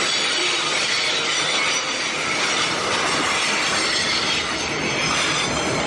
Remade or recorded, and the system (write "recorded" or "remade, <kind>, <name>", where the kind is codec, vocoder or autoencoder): recorded